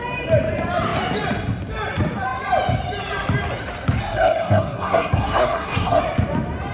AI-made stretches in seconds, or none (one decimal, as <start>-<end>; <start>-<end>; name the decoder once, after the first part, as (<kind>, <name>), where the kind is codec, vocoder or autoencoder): 4.0-6.0 (codec, SNAC)